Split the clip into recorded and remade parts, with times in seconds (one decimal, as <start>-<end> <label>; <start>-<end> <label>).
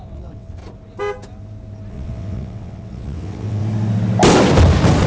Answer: 0.0-0.6 remade; 0.6-1.9 recorded; 1.9-3.6 remade; 3.6-5.1 recorded